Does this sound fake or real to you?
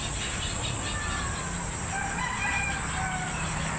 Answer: fake